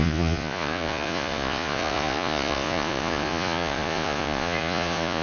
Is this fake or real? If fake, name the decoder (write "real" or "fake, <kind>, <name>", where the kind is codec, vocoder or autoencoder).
fake, vocoder, Vocos